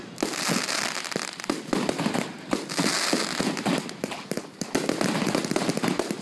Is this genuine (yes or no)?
yes